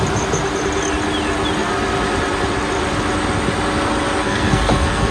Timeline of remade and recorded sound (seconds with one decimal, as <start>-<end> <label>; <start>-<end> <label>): 0.0-4.2 recorded; 4.2-5.1 remade